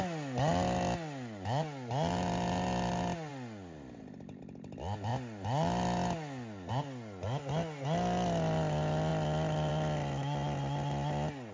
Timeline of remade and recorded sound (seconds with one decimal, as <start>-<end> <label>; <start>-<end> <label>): 0.0-11.5 recorded